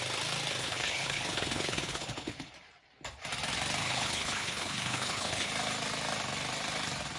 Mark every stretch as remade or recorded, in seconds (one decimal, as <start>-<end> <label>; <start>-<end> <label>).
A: 0.0-0.6 recorded; 0.6-2.5 remade; 2.5-3.8 recorded; 3.8-5.5 remade; 5.5-7.2 recorded